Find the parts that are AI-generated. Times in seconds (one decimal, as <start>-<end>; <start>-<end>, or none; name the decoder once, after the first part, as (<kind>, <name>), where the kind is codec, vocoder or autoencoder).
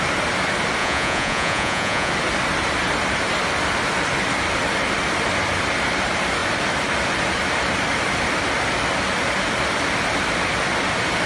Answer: 0.8-2.1 (vocoder, Vocos)